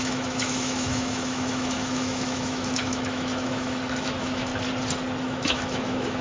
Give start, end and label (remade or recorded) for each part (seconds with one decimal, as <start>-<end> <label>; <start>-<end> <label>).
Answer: 0.0-4.5 remade; 4.5-5.2 recorded; 5.2-6.2 remade